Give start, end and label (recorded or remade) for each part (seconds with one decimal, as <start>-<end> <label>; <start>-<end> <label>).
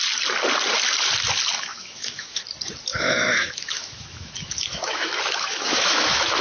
0.0-1.7 recorded; 1.7-2.4 remade; 2.4-2.9 recorded; 2.9-6.4 remade